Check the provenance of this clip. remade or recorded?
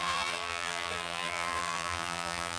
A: remade